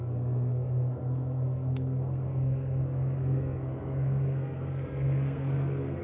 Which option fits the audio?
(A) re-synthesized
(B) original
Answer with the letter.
A